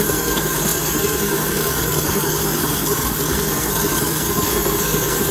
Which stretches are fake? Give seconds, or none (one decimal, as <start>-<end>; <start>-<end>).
0.0-5.3

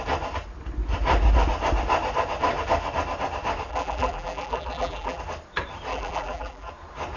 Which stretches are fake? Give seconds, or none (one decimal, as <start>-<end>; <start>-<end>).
3.7-5.2; 5.9-6.7

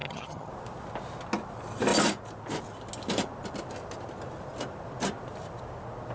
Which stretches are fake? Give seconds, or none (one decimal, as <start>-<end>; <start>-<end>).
0.0-0.5